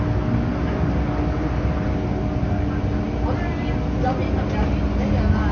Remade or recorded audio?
recorded